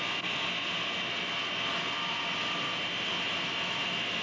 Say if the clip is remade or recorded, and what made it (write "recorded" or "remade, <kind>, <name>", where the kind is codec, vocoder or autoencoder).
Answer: recorded